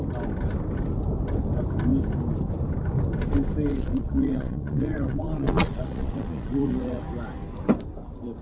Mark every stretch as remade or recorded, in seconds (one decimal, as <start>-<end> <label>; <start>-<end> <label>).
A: 0.0-3.7 recorded; 3.7-7.0 remade; 7.0-8.4 recorded